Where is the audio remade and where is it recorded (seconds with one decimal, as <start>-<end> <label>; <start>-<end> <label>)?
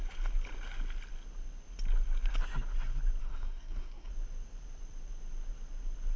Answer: 0.0-3.2 recorded; 3.2-4.1 remade; 4.1-6.2 recorded